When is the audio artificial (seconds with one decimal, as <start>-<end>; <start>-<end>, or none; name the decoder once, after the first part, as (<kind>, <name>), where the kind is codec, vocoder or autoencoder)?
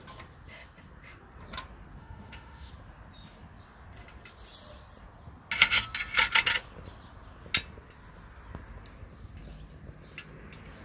2.0-2.7 (autoencoder, DAC-VAE)